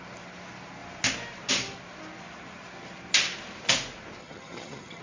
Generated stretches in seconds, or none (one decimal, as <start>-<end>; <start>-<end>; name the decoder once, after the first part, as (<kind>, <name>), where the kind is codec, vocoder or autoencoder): 4.2-5.0 (vocoder, HiFi-GAN)